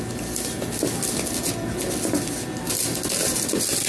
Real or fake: real